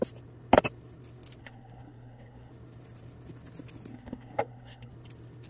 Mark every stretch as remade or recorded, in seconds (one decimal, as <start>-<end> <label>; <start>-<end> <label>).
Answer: 0.0-1.4 recorded; 1.4-2.5 remade; 2.5-3.9 recorded; 3.9-4.9 remade; 4.9-5.5 recorded